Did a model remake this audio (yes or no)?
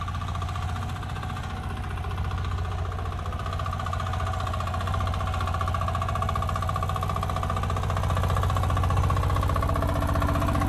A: no